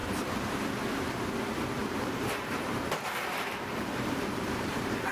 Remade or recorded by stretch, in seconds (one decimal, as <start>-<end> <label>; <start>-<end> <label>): 0.0-0.7 remade; 0.7-1.8 recorded; 1.8-5.1 remade